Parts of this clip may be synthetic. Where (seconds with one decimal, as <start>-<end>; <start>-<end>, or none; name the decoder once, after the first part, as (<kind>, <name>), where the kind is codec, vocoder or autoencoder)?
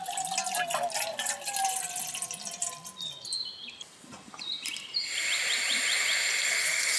2.6-3.8 (vocoder, BigVGAN v2)